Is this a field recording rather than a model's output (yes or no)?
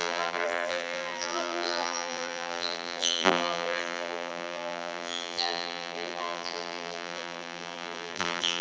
no